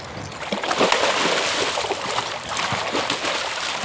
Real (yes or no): yes